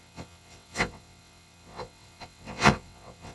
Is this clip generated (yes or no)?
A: yes